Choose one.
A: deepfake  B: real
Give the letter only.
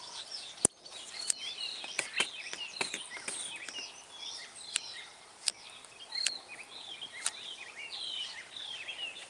B